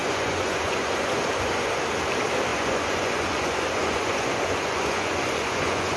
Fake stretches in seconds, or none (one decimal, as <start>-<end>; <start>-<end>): 0.0-1.8; 2.5-6.0